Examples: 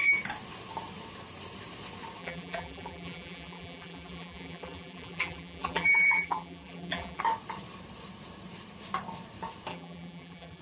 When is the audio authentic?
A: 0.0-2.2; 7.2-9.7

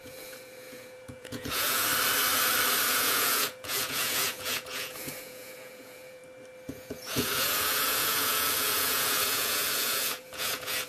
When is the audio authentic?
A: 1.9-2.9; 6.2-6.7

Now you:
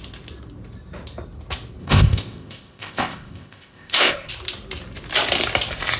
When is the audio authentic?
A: 0.0-1.8; 4.3-6.0

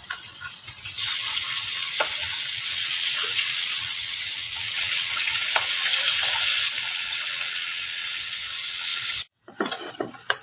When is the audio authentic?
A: 5.9-6.8